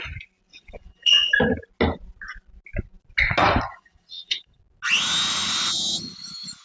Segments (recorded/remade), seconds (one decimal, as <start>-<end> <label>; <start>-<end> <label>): 0.0-0.5 recorded; 0.5-1.3 remade; 1.3-3.7 recorded; 3.7-4.6 remade; 4.6-6.6 recorded